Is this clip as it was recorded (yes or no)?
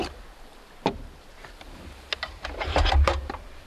yes